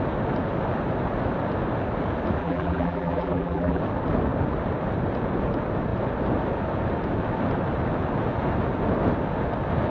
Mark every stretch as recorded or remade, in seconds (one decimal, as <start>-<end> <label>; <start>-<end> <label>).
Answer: 0.0-2.4 recorded; 2.4-3.8 remade; 3.8-9.9 recorded